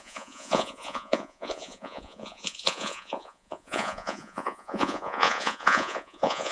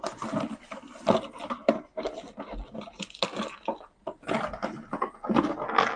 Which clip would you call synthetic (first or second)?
first